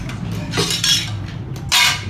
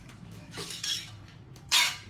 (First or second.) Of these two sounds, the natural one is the first